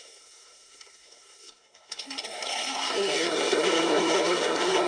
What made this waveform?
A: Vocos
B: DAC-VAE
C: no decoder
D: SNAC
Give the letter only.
D